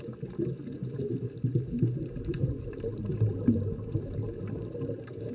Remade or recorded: remade